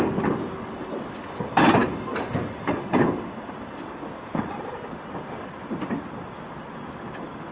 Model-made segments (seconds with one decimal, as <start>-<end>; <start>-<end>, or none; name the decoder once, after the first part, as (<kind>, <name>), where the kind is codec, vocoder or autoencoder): none